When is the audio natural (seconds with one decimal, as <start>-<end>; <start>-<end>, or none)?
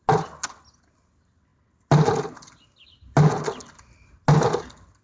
0.0-5.0